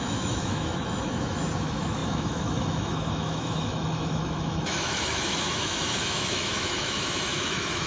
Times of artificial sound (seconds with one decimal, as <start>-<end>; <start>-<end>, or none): 0.0-7.9